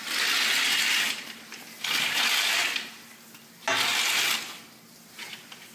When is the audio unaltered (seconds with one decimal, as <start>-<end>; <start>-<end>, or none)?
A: 0.0-5.7